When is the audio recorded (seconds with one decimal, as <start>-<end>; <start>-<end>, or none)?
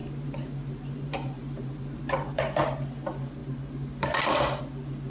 2.4-5.1